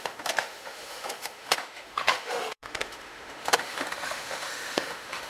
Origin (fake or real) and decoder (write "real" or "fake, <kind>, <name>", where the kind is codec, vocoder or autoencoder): fake, autoencoder, DAC-VAE